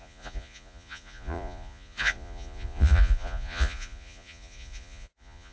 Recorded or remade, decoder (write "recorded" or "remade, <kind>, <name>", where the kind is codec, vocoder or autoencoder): remade, vocoder, Vocos